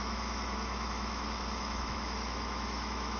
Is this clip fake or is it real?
fake